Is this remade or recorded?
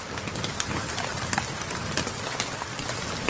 recorded